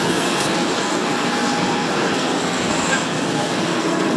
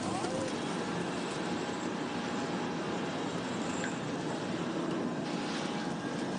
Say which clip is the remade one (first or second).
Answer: first